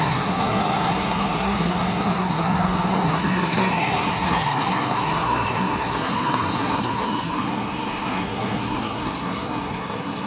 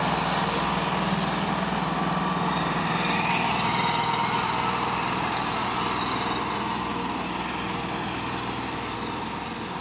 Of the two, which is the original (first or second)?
second